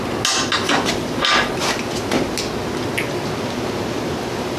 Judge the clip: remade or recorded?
recorded